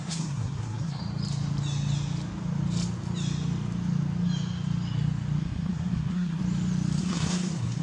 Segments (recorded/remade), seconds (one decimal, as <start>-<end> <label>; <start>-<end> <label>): 0.0-1.0 remade; 1.0-5.4 recorded; 5.4-6.4 remade; 6.4-7.0 recorded; 7.0-7.8 remade

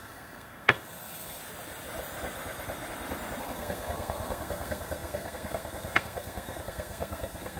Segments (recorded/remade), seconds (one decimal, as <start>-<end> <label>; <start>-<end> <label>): 0.0-1.4 remade; 1.4-3.4 recorded; 3.4-7.6 remade